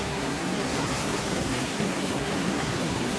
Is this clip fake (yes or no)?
yes